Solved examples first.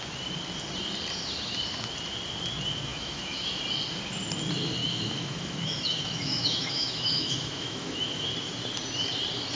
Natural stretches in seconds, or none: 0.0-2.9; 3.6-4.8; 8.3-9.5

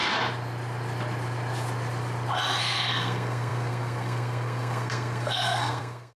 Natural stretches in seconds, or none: 0.0-2.6